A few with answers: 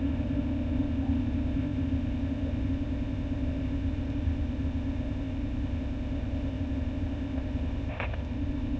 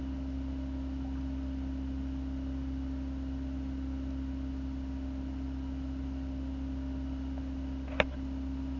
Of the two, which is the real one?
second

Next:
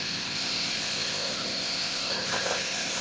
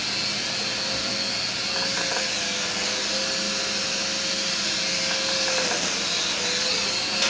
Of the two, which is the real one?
second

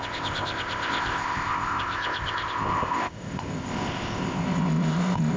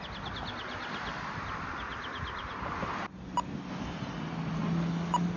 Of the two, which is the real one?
second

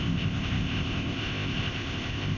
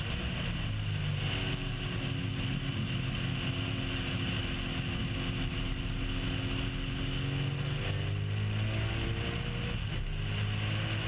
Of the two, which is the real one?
second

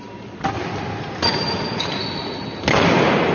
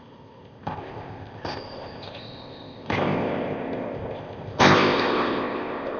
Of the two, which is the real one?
first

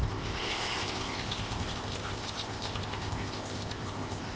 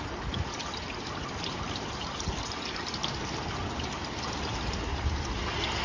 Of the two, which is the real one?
second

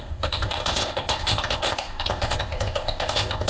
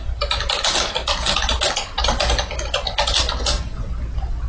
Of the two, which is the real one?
second